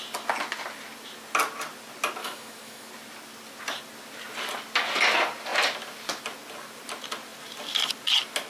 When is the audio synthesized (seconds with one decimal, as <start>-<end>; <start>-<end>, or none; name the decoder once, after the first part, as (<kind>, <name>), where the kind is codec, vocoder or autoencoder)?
2.2-2.9 (autoencoder, DAC-VAE)